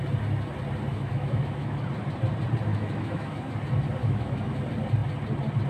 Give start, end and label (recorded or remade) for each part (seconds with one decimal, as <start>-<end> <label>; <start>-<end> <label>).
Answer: 0.0-0.9 recorded; 0.9-1.8 remade; 1.8-2.7 recorded; 2.7-3.5 remade; 3.5-4.0 recorded; 4.0-4.6 remade; 4.6-5.7 recorded